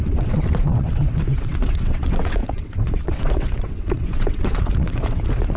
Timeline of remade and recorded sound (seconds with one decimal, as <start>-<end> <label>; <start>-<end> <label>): 0.0-5.6 remade